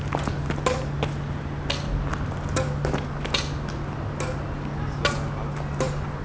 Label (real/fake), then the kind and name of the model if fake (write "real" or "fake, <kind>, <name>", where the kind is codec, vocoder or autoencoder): real